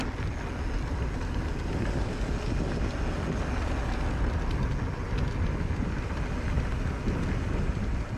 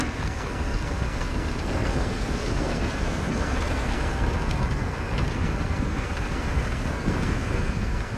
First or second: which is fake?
second